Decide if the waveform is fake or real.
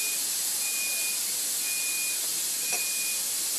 real